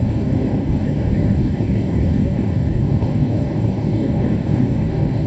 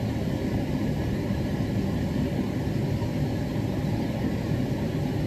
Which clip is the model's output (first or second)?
first